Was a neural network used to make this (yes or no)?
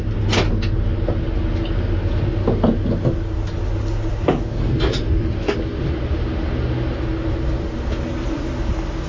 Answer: no